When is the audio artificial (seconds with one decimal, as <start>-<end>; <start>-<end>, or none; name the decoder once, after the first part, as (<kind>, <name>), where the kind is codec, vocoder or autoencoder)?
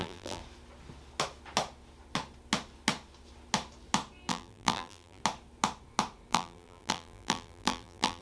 0.0-0.4 (vocoder, BigVGAN v2); 4.3-5.2; 6.3-8.2